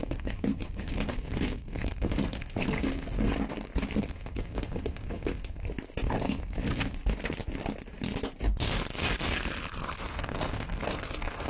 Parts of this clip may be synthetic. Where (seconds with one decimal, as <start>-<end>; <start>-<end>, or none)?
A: 0.0-3.3; 4.0-5.6; 6.1-7.0; 9.9-11.5